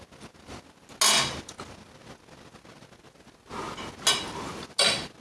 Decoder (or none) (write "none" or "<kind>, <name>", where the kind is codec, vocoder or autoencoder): none